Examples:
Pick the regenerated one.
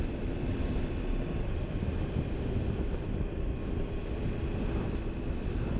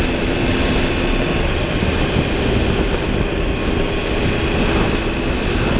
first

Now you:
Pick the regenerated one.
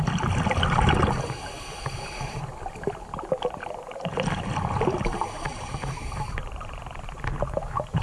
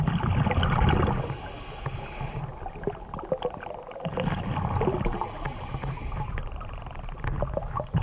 first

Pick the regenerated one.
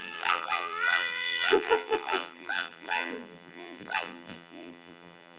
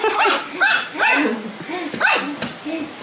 first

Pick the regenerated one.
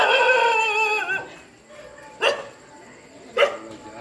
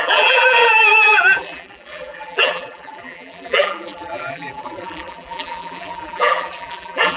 second